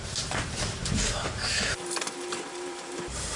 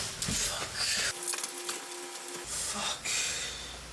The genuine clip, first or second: second